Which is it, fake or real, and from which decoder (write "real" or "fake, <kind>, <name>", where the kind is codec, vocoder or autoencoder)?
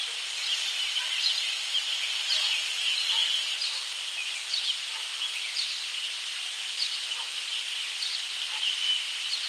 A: real